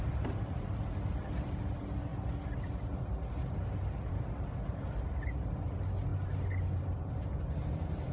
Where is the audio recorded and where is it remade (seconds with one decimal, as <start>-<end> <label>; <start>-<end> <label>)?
0.0-8.1 recorded